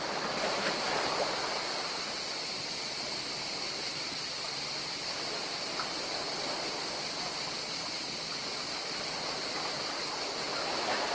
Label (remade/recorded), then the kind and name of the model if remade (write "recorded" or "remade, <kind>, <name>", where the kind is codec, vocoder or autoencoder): recorded